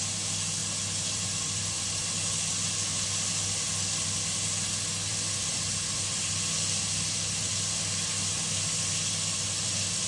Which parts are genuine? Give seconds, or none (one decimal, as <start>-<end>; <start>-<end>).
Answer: 0.0-0.6; 2.1-5.1; 6.2-10.1